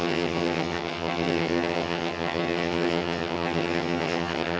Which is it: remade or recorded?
remade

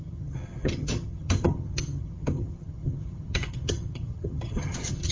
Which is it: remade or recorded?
remade